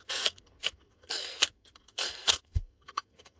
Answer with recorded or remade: remade